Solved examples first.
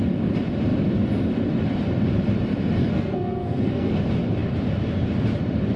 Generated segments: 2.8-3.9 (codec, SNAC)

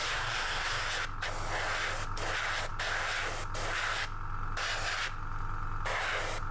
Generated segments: 0.0-0.8 (codec, SNAC)

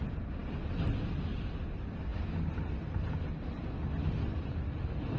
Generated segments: none

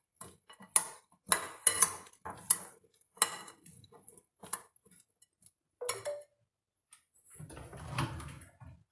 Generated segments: none

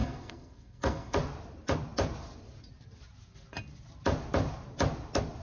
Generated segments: 0.0-1.2 (codec, SNAC)

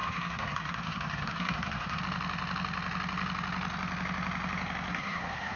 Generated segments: 0.0-2.0 (codec, SNAC); 4.9-5.6